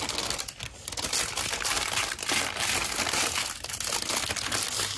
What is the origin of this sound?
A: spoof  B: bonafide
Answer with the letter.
B